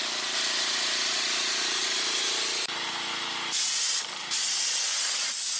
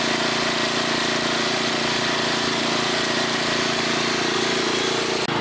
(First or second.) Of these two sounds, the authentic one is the second